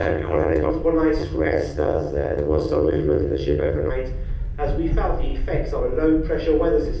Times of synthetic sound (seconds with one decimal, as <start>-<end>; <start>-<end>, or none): 0.0-0.7; 1.2-3.9